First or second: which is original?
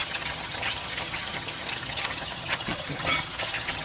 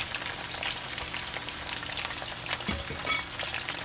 second